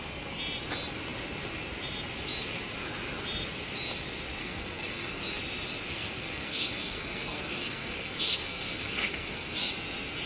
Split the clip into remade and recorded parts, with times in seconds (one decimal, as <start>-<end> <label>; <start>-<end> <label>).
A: 0.0-4.4 recorded; 4.4-5.2 remade; 5.2-5.9 recorded; 5.9-9.7 remade; 9.7-10.3 recorded

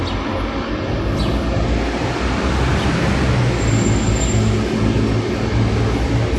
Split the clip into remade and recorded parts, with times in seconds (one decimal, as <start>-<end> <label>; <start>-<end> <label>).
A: 0.0-6.4 recorded